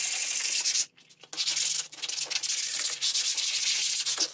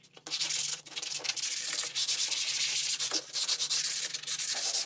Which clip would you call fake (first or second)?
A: second